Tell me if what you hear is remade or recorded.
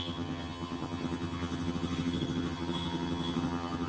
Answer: remade